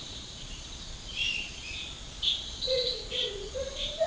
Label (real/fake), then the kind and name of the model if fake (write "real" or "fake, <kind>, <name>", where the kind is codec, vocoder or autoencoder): fake, vocoder, Vocos